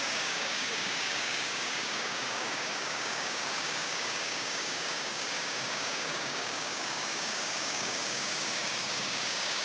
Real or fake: fake